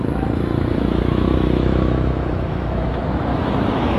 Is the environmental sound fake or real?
fake